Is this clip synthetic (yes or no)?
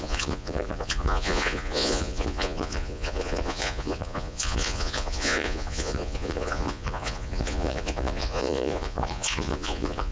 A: yes